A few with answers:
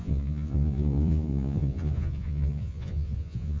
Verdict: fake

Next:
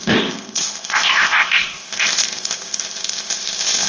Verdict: fake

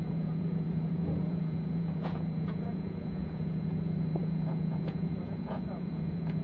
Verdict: fake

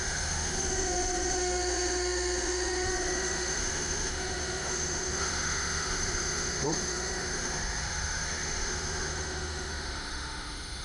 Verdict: fake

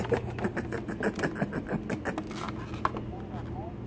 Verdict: real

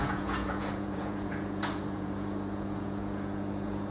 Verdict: fake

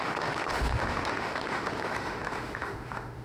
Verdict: fake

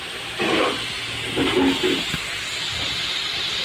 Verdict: real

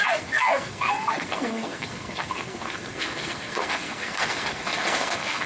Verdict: fake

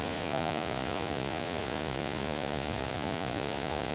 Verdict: fake